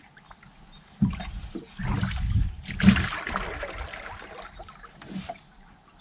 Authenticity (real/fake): real